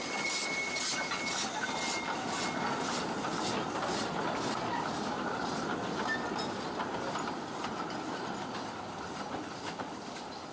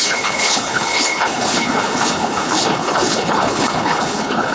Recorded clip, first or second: first